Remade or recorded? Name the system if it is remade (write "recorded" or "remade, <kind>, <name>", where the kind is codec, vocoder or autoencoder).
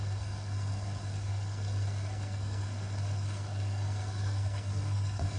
remade, codec, SNAC